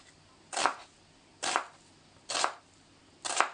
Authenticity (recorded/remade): recorded